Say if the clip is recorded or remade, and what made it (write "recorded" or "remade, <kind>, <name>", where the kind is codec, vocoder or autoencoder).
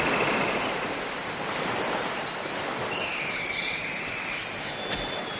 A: recorded